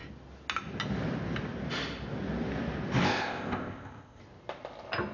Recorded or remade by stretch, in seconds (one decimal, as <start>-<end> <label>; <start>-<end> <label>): 0.0-3.0 recorded; 3.0-4.2 remade; 4.2-5.1 recorded